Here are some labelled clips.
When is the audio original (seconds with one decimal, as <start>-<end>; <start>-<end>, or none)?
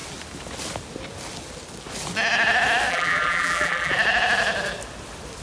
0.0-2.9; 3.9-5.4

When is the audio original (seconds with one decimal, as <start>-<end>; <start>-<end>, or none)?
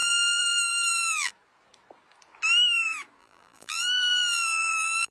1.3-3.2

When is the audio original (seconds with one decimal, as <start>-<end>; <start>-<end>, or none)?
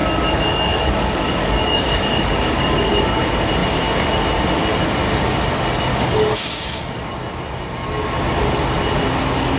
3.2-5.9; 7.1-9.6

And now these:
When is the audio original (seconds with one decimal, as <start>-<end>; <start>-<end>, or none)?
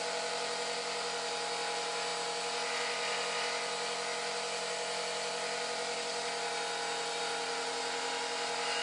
0.0-8.8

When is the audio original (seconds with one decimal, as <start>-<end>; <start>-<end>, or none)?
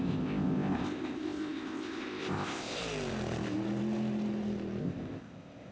2.8-4.8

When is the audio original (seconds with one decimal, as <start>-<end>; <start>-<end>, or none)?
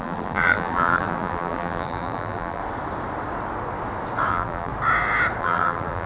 2.6-4.3; 4.7-5.4